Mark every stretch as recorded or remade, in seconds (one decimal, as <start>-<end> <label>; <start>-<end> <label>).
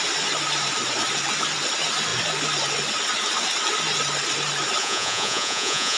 0.0-4.8 recorded; 4.8-6.0 remade